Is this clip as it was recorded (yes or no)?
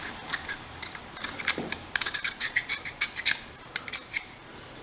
no